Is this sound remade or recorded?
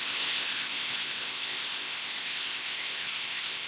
remade